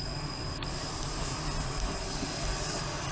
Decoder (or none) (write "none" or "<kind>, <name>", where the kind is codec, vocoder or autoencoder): none